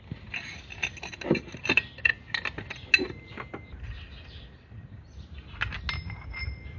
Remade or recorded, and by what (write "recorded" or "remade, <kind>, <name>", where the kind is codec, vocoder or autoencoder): recorded